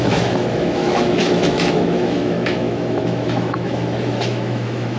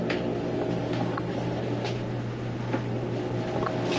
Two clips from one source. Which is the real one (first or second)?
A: second